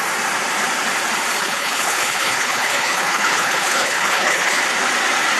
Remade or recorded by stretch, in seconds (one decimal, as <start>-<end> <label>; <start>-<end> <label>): 0.0-1.4 recorded; 1.4-4.6 remade; 4.6-5.4 recorded

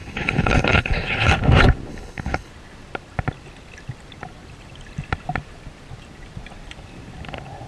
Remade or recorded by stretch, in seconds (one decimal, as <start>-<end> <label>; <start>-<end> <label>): 0.0-1.3 remade; 1.3-1.9 recorded; 1.9-2.5 remade; 2.5-7.7 recorded